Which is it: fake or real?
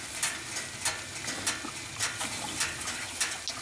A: real